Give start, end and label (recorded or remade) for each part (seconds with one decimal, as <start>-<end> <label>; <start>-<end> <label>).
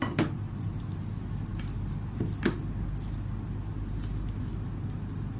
0.0-5.4 recorded